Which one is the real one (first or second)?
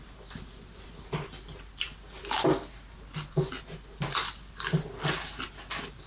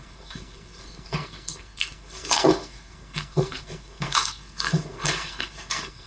first